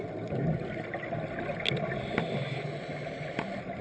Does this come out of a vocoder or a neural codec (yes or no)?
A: no